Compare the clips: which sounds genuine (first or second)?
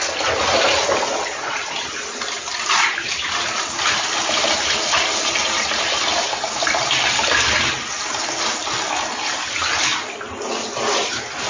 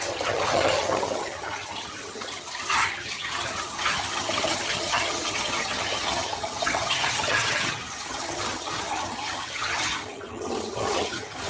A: first